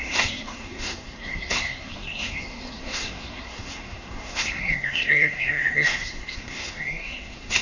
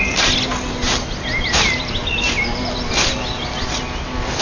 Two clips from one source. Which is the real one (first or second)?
second